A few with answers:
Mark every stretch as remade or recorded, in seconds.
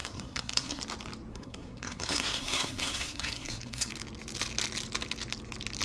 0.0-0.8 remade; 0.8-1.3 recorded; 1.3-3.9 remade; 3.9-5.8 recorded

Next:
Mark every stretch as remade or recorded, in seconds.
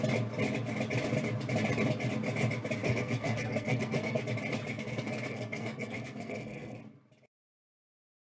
0.0-2.8 recorded; 2.8-4.2 remade; 4.2-4.7 recorded; 4.7-6.8 remade; 6.8-8.3 recorded